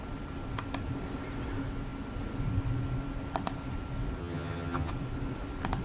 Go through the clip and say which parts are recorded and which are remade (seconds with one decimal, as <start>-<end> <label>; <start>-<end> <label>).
0.0-4.2 recorded; 4.2-4.9 remade; 4.9-5.8 recorded